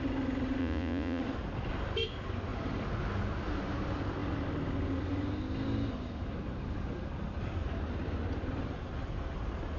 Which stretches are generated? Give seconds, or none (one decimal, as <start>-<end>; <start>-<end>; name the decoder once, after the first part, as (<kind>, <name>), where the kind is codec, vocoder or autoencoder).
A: 0.6-1.2 (vocoder, Vocos)